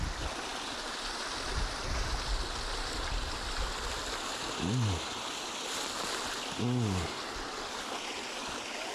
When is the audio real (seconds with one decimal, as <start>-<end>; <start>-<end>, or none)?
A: 0.0-8.9